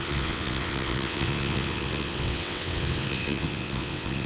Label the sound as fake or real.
fake